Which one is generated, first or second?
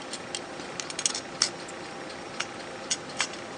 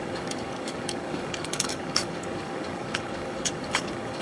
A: second